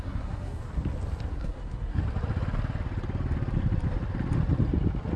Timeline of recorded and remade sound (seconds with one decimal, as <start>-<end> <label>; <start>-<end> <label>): 0.0-0.6 remade; 0.6-1.3 recorded; 1.3-2.0 remade; 2.0-5.2 recorded